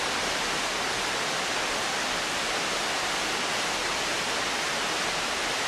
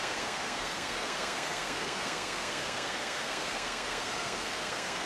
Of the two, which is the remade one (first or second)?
second